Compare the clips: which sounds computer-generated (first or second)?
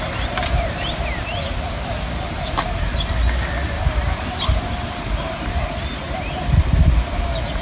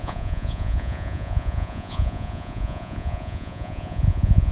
second